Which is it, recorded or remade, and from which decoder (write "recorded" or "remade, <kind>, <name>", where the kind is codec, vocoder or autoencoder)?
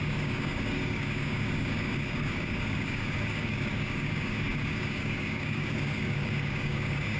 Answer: remade, codec, DAC